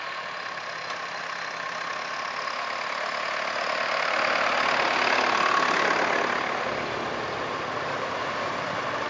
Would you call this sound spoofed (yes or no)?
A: no